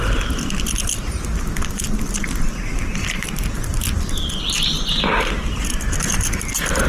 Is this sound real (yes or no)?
yes